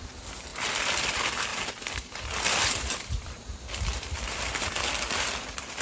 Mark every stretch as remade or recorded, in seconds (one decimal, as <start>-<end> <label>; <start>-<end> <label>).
0.0-1.5 recorded; 1.5-4.6 remade; 4.6-5.8 recorded